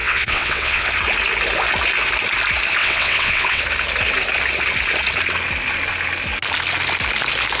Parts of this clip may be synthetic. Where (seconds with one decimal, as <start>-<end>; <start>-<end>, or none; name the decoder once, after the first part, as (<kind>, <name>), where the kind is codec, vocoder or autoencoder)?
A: 0.0-0.9 (vocoder, WaveNeXt); 2.8-3.6